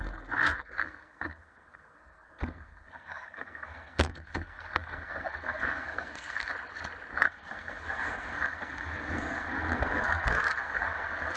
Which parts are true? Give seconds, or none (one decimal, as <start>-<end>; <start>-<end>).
6.5-7.1